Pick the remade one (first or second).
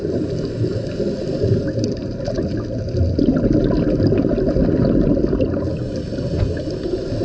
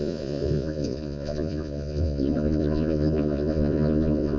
second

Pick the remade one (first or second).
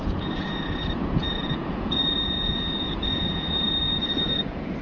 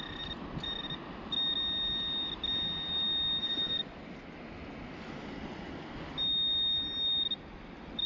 first